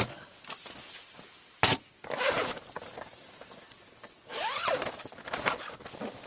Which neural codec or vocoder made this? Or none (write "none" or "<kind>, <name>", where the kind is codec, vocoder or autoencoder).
none